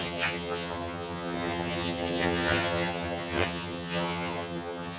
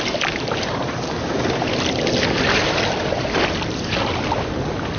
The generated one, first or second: first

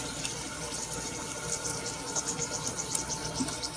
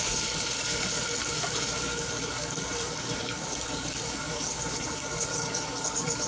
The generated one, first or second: second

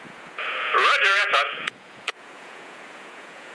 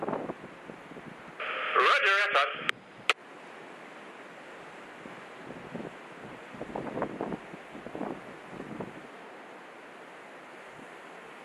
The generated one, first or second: first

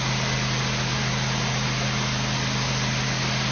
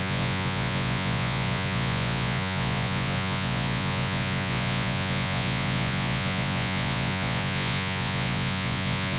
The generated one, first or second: second